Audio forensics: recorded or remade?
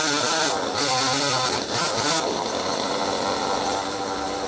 recorded